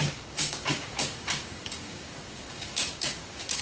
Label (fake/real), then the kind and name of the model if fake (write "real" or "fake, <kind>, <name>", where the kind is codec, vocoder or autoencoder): fake, codec, DAC